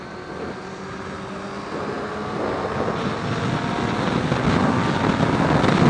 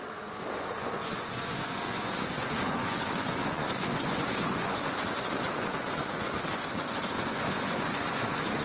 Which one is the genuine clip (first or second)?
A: first